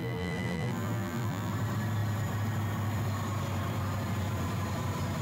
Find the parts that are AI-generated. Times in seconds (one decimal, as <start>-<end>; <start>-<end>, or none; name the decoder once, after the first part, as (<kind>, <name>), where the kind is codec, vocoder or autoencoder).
0.0-1.5 (vocoder, BigVGAN v2)